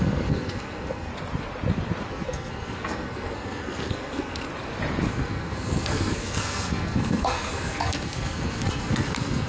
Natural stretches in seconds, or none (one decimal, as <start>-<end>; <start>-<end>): 1.1-2.1; 4.5-5.1